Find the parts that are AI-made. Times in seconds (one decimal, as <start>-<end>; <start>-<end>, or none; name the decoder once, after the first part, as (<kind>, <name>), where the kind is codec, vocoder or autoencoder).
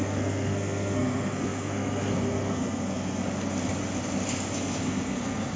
0.0-3.2 (codec, SNAC); 4.6-5.6